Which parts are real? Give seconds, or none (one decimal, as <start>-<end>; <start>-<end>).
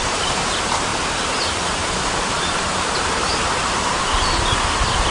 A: none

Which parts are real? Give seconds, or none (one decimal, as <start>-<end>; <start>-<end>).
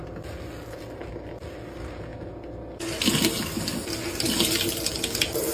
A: 0.0-5.5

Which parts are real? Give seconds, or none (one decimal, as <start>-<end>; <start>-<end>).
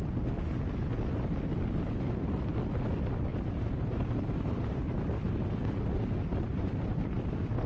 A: 0.0-3.3; 5.3-6.3; 7.0-7.7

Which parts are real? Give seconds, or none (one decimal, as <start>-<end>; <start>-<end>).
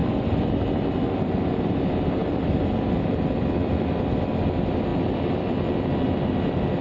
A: 0.8-2.2; 4.0-4.9; 6.2-6.8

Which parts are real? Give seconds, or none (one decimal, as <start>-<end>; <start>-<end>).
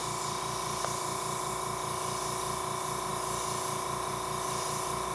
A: 1.5-5.1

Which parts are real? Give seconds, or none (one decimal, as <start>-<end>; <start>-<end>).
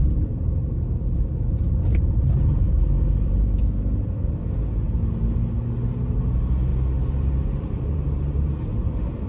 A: 0.0-0.6; 3.6-6.7; 8.9-9.3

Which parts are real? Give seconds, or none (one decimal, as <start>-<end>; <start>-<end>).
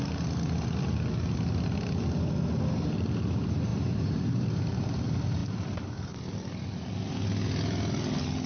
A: 0.0-3.7; 4.8-8.5